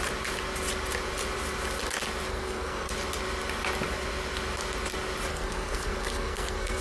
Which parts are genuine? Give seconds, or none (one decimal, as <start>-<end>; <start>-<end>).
0.0-2.3; 2.9-5.3